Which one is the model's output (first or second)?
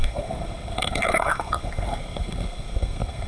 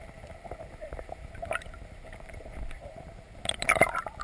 first